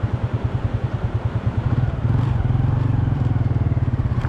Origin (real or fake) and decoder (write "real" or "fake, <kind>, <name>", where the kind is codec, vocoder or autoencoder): fake, vocoder, BigVGAN v2